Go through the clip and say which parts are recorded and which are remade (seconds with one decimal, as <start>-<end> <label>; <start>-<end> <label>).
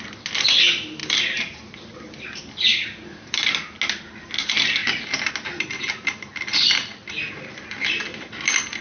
0.0-1.0 recorded; 1.0-2.4 remade; 2.4-6.5 recorded; 6.5-7.3 remade; 7.3-8.8 recorded